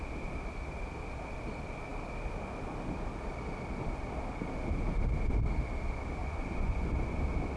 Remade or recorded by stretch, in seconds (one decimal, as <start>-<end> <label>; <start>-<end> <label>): 0.0-6.2 recorded; 6.2-6.9 remade; 6.9-7.6 recorded